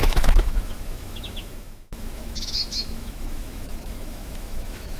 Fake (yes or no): yes